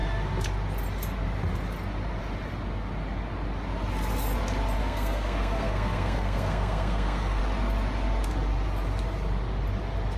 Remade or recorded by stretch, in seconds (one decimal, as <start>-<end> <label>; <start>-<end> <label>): 0.0-4.8 recorded; 4.8-7.4 remade; 7.4-10.2 recorded